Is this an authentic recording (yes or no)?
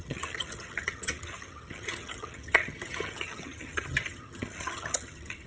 no